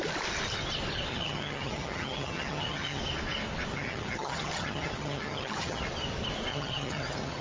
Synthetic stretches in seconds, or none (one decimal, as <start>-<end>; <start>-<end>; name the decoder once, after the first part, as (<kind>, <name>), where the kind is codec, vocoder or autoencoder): 1.1-3.0 (vocoder, HiFi-GAN); 3.7-5.8; 6.5-7.4